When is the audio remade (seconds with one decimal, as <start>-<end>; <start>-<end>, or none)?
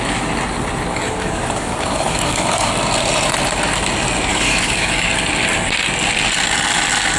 0.9-2.7; 4.3-5.1